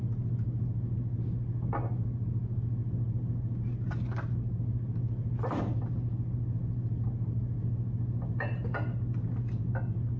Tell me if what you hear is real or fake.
real